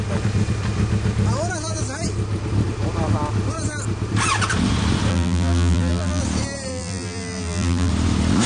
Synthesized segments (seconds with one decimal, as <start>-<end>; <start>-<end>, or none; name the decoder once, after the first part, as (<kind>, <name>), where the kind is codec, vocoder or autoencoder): 5.1-6.2 (vocoder, BigVGAN v2); 6.7-7.9